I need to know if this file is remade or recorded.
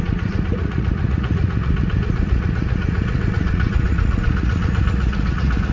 remade